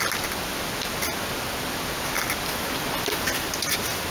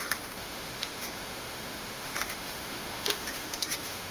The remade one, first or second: second